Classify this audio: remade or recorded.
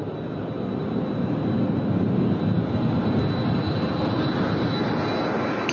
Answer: recorded